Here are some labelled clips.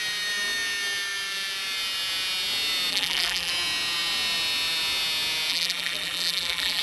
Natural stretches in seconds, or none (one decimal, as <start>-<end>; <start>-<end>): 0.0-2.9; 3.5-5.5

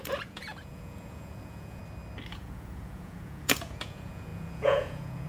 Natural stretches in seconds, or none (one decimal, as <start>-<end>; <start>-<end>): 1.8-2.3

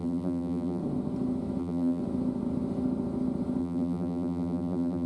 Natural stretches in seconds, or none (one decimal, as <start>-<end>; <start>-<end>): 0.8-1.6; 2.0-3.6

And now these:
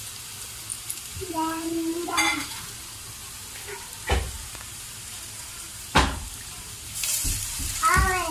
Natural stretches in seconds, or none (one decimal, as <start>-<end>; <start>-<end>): 0.0-0.7; 2.7-3.2; 7.9-8.3

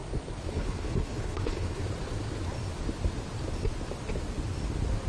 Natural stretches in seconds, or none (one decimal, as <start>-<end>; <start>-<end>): 0.0-0.5; 1.8-5.1

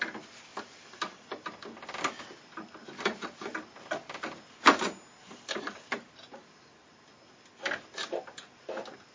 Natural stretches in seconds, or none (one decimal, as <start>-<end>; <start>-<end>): 0.0-9.1

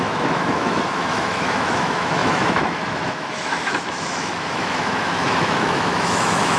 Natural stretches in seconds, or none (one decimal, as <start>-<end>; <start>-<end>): none